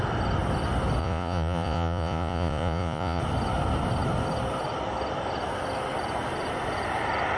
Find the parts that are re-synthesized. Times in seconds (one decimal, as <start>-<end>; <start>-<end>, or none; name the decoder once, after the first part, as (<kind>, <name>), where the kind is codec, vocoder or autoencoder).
1.0-3.2 (vocoder, Vocos)